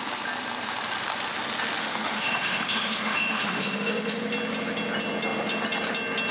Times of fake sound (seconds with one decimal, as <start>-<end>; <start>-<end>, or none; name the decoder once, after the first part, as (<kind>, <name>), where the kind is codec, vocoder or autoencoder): 1.8-4.2 (autoencoder, DAC-VAE)